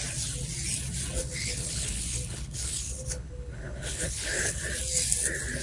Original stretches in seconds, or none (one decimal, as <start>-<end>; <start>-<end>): 0.0-1.2; 4.6-5.6

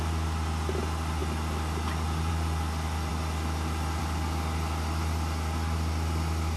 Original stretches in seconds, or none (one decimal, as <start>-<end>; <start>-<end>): 0.0-6.6

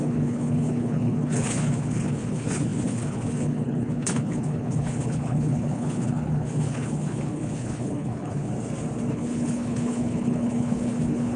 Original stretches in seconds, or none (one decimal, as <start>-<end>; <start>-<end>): 8.5-9.1

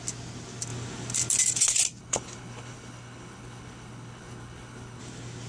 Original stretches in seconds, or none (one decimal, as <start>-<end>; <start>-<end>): 0.0-2.0; 5.0-5.5